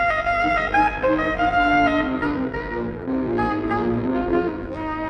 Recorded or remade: remade